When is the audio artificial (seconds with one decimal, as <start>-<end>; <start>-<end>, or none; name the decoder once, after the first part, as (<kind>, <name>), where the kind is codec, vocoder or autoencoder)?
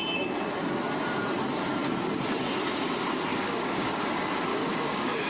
3.3-4.0 (codec, DAC); 4.5-5.3